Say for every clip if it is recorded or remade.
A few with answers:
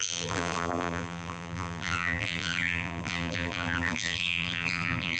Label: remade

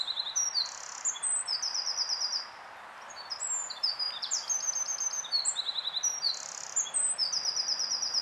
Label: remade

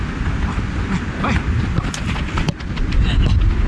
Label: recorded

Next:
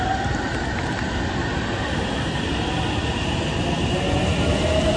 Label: recorded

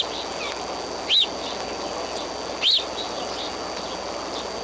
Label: recorded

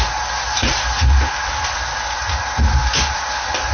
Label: recorded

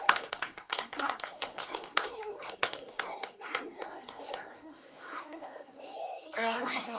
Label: remade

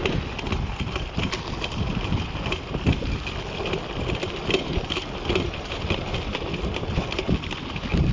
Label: recorded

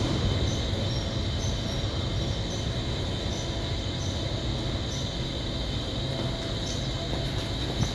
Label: recorded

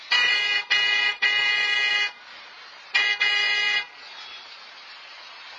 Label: remade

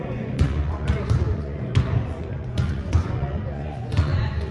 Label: remade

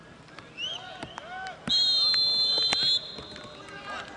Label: recorded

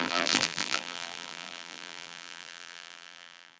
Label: remade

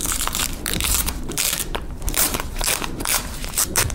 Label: remade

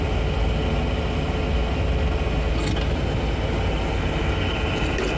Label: recorded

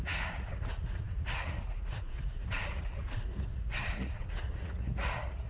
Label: remade